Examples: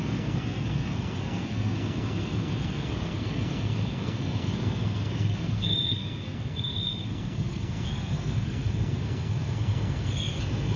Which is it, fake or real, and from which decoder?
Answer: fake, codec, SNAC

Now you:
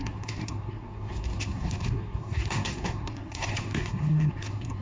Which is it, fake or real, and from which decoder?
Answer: fake, codec, SNAC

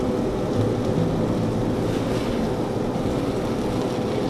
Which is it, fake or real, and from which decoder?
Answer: real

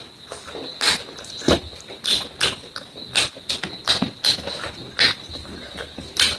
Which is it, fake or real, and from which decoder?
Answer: real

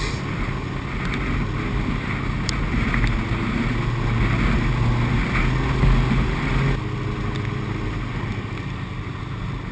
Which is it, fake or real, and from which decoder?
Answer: real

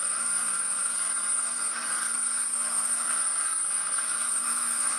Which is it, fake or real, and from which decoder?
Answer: fake, codec, SNAC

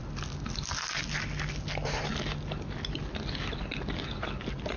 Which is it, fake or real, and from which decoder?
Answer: real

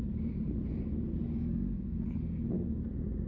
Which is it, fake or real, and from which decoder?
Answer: real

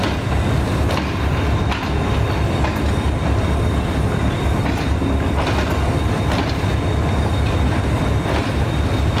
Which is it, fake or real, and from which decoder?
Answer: real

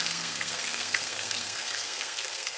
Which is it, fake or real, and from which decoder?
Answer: fake, codec, SNAC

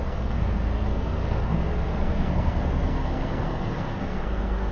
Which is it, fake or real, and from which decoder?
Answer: fake, codec, SNAC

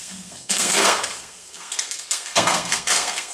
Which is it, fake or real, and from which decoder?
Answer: fake, codec, SNAC